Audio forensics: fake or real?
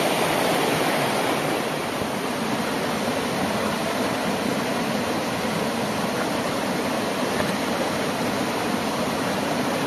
real